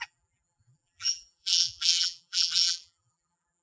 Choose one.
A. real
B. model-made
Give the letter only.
B